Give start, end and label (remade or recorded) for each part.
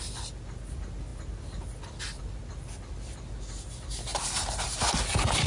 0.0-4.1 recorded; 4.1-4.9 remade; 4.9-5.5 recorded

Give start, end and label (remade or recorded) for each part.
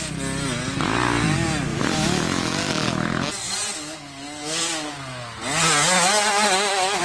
0.0-1.7 recorded; 1.7-3.3 remade; 3.3-7.0 recorded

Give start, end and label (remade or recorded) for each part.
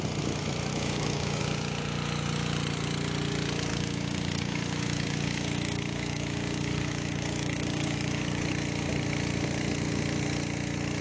0.0-0.7 recorded; 0.7-1.4 remade; 1.4-3.7 recorded; 3.7-8.5 remade; 8.5-11.0 recorded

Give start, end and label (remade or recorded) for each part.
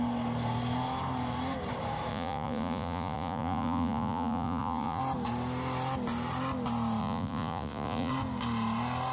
0.0-2.1 recorded; 2.1-5.0 remade; 5.0-7.0 recorded; 7.0-8.1 remade; 8.1-9.1 recorded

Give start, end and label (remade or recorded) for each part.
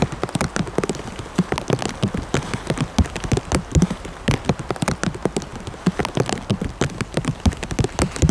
0.0-8.3 recorded